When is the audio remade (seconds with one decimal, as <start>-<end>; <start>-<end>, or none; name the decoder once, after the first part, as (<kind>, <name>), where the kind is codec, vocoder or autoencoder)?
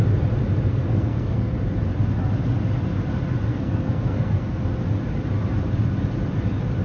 0.7-1.5 (codec, SNAC); 3.5-4.6